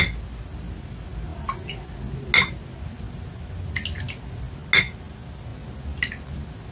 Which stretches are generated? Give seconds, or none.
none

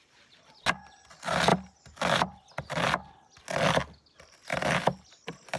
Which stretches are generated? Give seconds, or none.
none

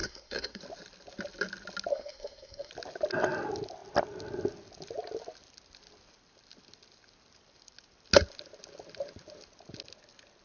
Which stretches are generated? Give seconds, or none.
0.0-0.6 (codec, SNAC); 1.9-2.7